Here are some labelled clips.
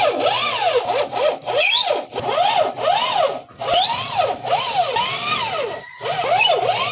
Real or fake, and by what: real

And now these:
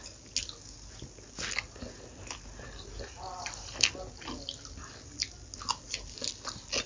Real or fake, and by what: real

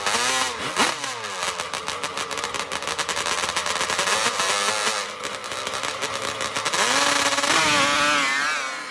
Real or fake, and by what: real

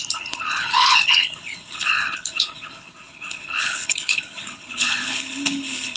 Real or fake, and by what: fake, codec, HILCodec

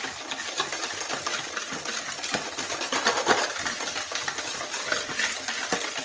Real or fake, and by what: real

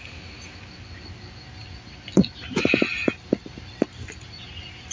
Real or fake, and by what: real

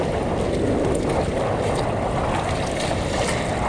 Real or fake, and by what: real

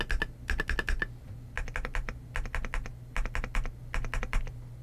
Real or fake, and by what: real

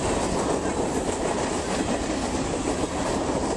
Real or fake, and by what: real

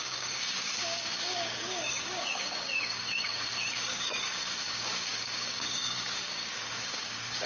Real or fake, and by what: fake, codec, DAC